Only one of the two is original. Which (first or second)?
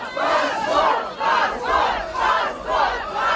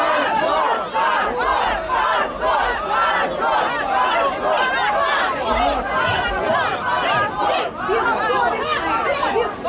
second